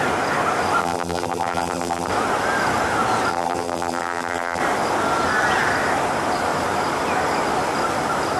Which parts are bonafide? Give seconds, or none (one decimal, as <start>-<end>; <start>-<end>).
0.0-0.8; 2.1-3.3; 4.6-8.4